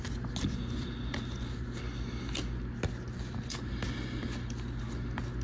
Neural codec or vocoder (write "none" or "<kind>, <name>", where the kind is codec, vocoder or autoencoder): none